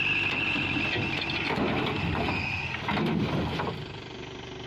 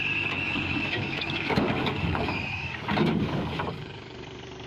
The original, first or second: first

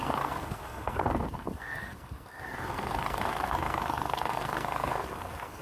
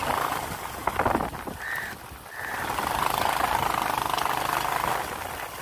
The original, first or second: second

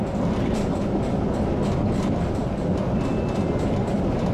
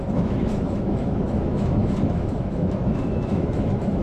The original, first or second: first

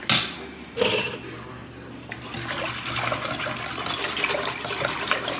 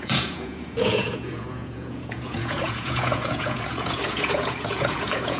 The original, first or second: first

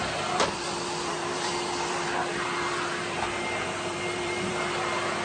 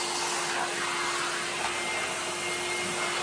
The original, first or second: second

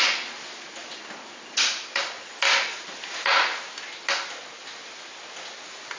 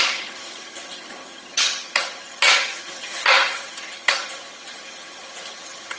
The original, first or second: first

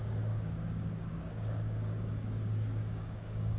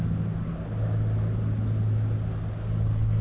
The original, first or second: second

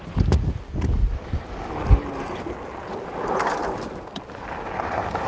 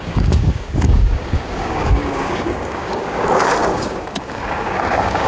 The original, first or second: first